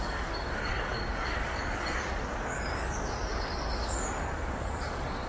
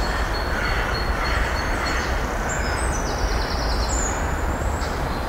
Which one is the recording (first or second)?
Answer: second